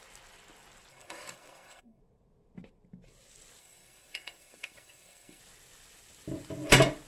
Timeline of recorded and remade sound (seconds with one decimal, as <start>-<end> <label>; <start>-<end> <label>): 0.0-0.9 recorded; 0.9-2.0 remade; 2.0-3.6 recorded; 3.6-5.4 remade; 5.4-7.1 recorded